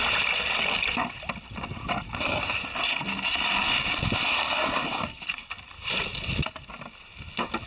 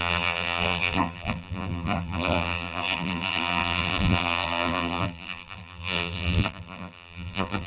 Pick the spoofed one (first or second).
second